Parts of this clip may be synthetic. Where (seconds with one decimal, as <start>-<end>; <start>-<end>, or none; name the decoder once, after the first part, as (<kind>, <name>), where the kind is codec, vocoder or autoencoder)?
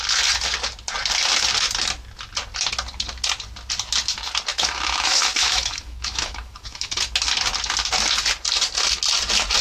4.5-7.0 (autoencoder, DAC-VAE)